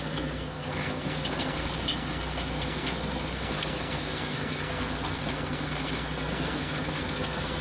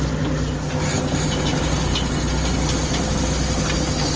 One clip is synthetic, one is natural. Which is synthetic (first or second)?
first